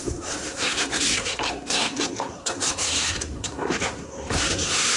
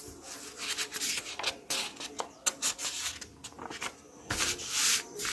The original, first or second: second